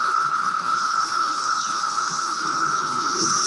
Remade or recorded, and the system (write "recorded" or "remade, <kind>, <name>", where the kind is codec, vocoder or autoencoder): remade, codec, HILCodec